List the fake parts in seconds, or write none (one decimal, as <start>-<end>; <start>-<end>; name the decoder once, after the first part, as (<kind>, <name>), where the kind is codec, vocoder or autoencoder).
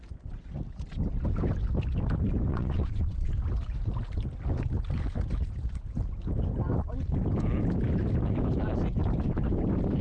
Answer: 2.5-3.3 (vocoder, WaveNeXt)